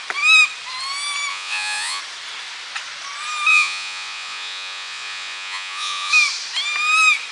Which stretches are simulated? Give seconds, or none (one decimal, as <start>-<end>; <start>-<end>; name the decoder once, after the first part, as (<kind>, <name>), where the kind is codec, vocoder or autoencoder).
1.3-2.0 (vocoder, Vocos); 3.5-6.1